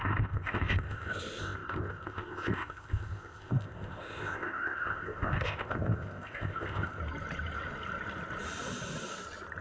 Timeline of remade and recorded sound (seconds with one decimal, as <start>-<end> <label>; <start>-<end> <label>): 0.0-7.0 remade; 7.0-9.6 recorded

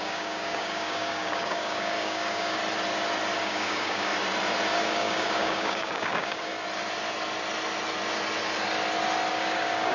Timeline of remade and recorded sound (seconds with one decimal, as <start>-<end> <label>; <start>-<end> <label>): 0.0-2.6 remade; 2.6-3.4 recorded; 3.4-4.1 remade; 4.1-4.8 recorded; 4.8-6.5 remade; 6.5-9.3 recorded; 9.3-9.9 remade

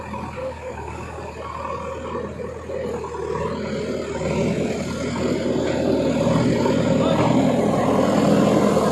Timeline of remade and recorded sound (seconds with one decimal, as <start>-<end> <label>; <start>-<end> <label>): 0.0-0.4 recorded; 0.4-1.3 remade; 1.3-8.9 recorded